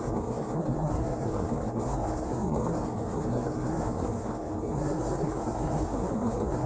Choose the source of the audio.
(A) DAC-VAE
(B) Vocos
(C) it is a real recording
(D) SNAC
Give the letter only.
D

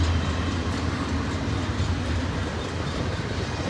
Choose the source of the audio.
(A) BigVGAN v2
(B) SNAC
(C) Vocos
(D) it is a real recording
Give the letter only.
D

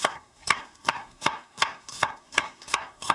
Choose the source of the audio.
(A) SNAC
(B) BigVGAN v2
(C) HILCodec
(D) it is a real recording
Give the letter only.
A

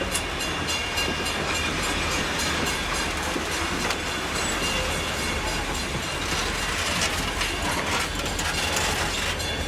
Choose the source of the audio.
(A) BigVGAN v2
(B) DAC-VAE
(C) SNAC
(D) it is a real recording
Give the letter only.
D